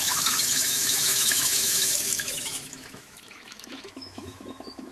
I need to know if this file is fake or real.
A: fake